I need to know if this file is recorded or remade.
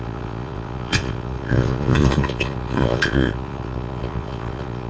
remade